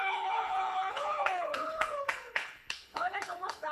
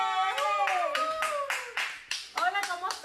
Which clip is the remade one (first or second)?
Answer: first